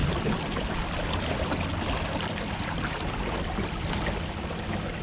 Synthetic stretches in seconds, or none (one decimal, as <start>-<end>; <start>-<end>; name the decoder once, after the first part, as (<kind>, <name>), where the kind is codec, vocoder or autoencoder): none